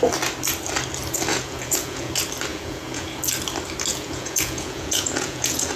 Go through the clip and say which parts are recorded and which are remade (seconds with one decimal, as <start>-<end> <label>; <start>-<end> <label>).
0.0-1.3 recorded; 1.3-2.1 remade; 2.1-2.5 recorded; 2.5-3.2 remade; 3.2-3.9 recorded; 3.9-5.8 remade